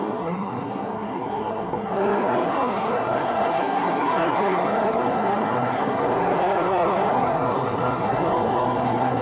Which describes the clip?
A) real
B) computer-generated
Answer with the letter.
B